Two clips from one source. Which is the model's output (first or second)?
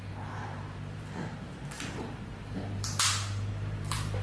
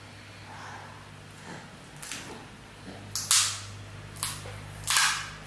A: first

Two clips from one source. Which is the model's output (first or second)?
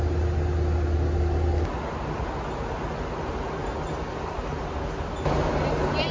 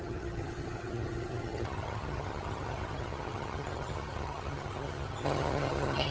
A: second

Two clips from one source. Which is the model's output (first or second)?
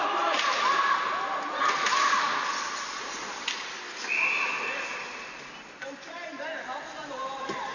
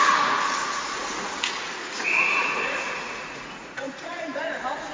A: second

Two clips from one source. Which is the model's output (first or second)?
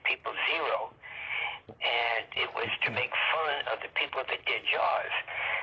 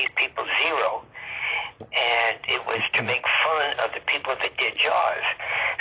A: first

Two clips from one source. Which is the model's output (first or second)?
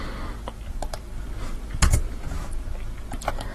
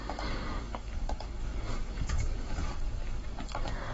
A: second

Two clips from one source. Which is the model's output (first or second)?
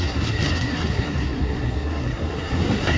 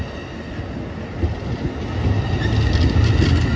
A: first